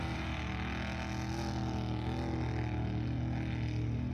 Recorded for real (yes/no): yes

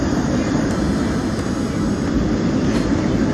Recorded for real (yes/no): yes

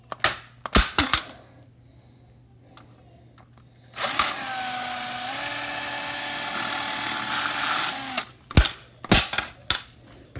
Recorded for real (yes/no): yes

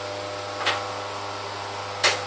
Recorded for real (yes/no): yes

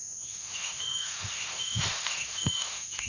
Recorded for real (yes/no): no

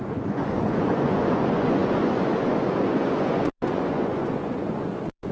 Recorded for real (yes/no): no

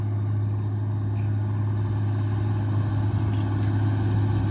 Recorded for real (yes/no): yes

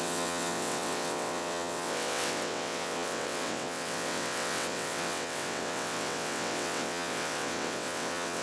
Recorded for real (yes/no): no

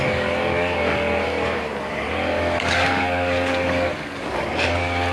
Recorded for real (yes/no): no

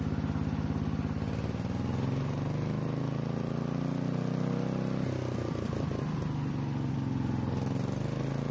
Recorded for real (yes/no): yes